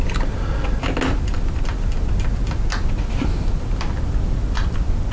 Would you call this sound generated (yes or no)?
no